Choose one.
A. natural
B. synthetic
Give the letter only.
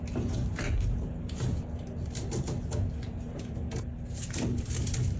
A